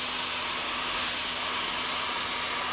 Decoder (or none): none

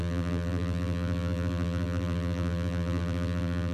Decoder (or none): vocoder, BigVGAN v2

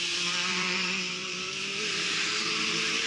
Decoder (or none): vocoder, BigVGAN v2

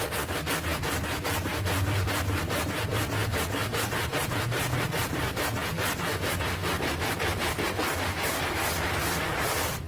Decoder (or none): none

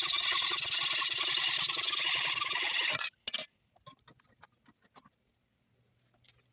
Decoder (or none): none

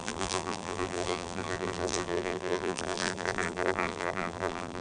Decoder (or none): vocoder, BigVGAN v2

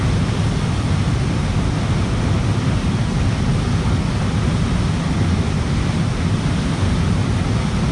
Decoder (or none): none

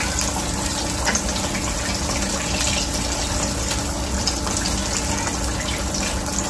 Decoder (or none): none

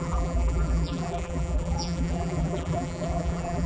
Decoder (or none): vocoder, BigVGAN v2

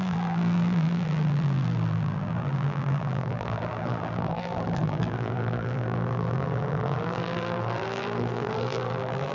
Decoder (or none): vocoder, BigVGAN v2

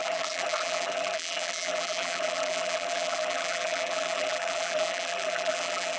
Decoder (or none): vocoder, BigVGAN v2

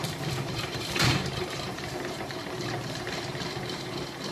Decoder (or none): vocoder, BigVGAN v2